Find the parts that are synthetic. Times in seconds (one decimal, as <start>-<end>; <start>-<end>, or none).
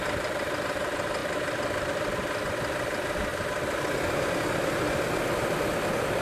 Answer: 0.0-3.3